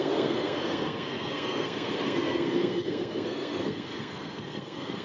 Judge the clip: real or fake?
fake